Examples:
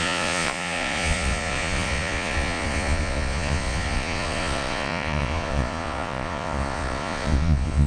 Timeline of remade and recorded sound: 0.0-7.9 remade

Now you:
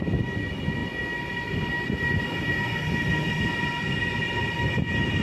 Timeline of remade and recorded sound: 0.0-5.2 recorded

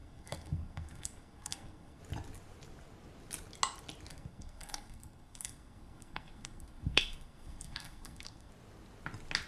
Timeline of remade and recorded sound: 0.0-2.0 remade; 2.0-4.1 recorded; 4.1-8.5 remade; 8.5-9.5 recorded

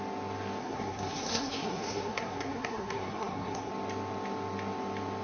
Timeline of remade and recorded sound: 0.0-0.6 recorded; 0.6-3.7 remade; 3.7-5.2 recorded

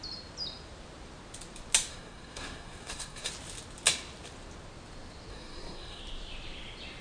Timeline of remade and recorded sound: 0.0-1.9 recorded; 1.9-3.3 remade; 3.3-5.3 recorded; 5.3-6.0 remade; 6.0-7.0 recorded

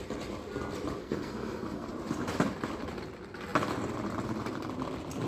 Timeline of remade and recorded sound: 0.0-1.0 recorded; 1.0-1.9 remade; 1.9-5.3 recorded